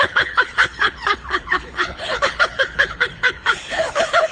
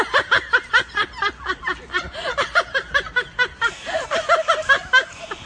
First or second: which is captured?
second